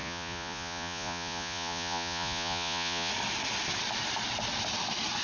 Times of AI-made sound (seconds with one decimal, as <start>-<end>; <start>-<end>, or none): 0.0-3.1